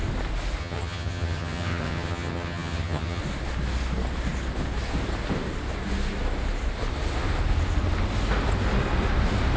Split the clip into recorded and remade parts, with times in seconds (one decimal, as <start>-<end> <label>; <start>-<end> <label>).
0.0-0.6 recorded; 0.6-3.2 remade; 3.2-9.6 recorded